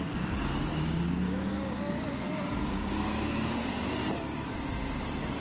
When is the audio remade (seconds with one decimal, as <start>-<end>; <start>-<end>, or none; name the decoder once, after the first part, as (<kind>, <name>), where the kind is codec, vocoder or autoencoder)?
0.7-3.9 (codec, DAC)